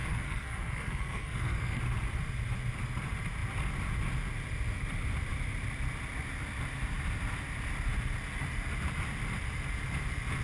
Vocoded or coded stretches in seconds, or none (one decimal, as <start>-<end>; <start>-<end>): 0.0-1.8